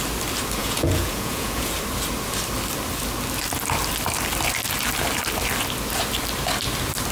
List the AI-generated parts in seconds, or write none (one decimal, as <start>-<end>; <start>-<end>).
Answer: 0.6-1.7